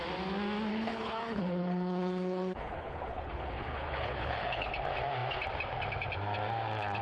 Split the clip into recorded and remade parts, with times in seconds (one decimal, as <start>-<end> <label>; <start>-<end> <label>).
0.0-0.7 recorded; 0.7-4.7 remade; 4.7-7.0 recorded